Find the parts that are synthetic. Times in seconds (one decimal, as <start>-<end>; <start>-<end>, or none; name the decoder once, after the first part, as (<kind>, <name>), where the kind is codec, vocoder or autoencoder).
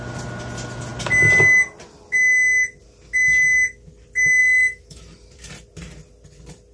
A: 4.4-5.0 (autoencoder, DAC-VAE)